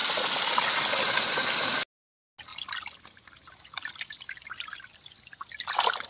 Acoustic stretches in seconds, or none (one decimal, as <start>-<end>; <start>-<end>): 0.0-6.1